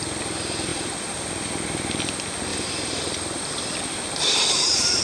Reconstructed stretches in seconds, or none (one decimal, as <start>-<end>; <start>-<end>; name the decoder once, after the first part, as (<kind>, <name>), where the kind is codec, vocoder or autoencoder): 0.7-1.3 (vocoder, BigVGAN v2); 2.5-5.0